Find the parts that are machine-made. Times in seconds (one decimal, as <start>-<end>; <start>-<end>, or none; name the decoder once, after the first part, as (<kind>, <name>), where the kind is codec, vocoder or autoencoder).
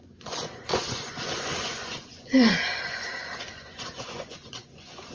0.0-5.1 (vocoder, Vocos)